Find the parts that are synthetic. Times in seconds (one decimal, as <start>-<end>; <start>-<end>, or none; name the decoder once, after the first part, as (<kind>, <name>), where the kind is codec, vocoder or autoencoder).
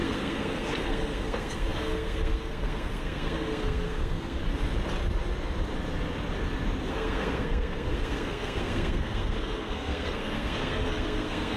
0.0-4.4 (codec, SNAC); 6.9-11.6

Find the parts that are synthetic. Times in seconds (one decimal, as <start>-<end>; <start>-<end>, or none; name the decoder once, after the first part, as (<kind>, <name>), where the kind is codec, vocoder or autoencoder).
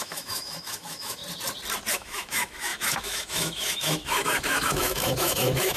0.0-1.2 (autoencoder, DAC-VAE); 1.9-5.8